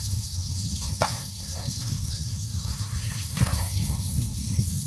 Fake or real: fake